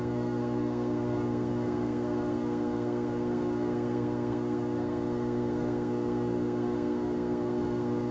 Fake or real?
fake